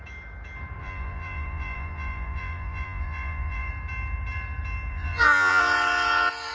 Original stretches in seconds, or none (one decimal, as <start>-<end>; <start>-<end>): 0.0-0.8; 3.7-4.9; 5.6-6.5